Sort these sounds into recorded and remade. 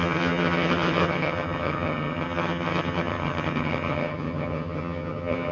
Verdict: remade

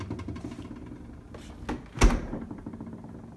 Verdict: recorded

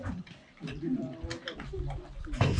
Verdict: recorded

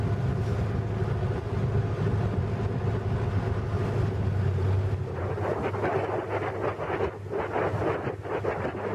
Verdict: recorded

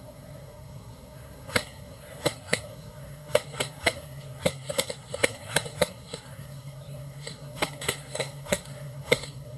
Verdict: remade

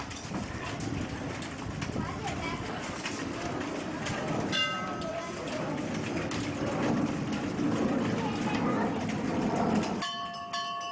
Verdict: recorded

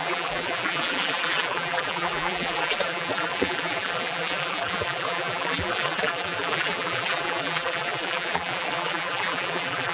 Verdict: remade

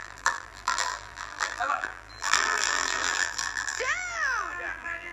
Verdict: remade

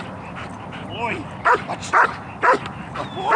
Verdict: recorded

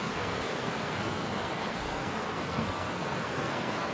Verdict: remade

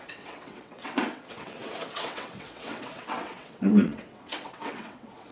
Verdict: remade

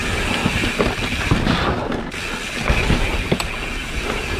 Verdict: recorded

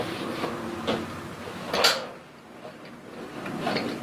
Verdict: recorded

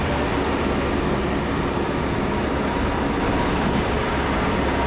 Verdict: recorded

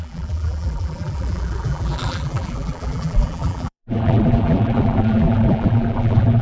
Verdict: remade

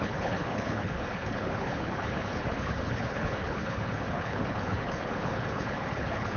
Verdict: remade